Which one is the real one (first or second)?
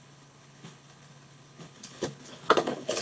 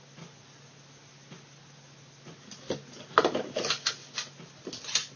second